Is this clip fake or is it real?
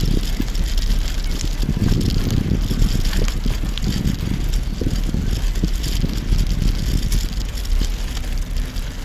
real